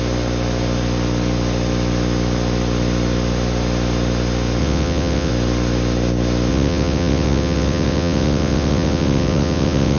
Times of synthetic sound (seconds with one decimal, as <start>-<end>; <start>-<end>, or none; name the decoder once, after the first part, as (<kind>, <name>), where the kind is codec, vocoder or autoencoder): 4.6-5.3 (vocoder, WaveNeXt); 6.5-10.0